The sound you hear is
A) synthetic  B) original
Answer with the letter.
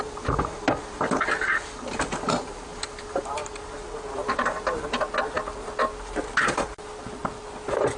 B